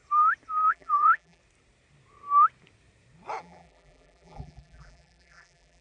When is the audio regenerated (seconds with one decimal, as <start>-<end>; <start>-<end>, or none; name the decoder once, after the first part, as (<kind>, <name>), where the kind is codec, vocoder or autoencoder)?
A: 0.7-1.4 (vocoder, BigVGAN v2); 3.4-5.8